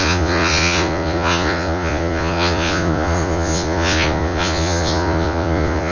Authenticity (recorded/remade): remade